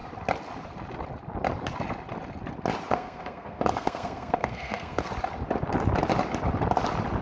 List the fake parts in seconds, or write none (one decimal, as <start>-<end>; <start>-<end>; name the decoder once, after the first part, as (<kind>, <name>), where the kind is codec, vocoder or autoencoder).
2.9-5.1 (codec, SNAC)